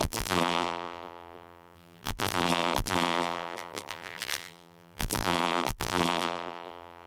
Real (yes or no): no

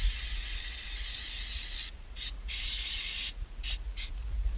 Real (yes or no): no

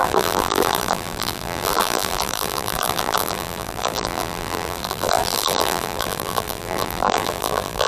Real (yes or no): no